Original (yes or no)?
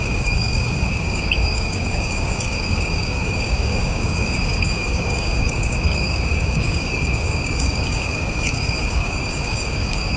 no